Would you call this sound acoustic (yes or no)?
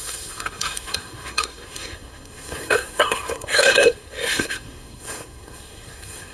no